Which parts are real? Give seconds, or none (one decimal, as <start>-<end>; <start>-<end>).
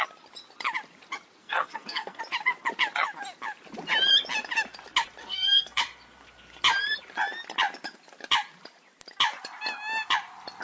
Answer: 0.0-1.4; 2.2-5.2; 5.8-10.6